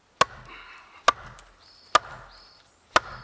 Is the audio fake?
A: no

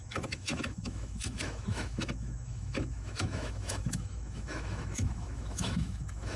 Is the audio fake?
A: yes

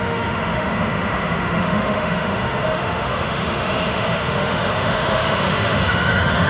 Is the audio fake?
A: yes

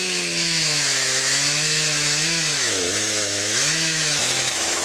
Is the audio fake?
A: yes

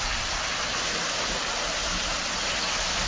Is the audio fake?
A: no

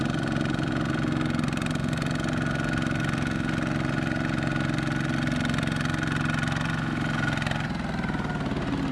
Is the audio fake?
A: no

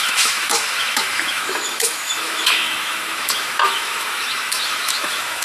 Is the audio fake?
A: yes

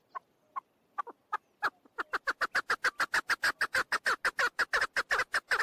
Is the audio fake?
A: no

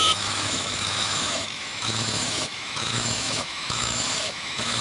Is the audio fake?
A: yes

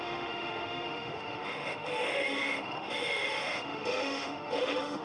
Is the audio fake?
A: yes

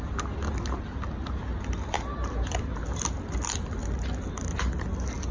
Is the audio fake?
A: no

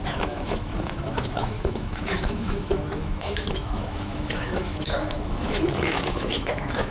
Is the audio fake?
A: yes